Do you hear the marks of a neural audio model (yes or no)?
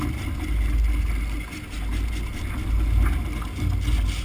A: no